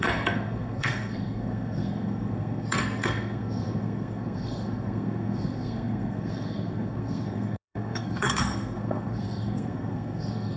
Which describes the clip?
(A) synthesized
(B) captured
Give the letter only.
A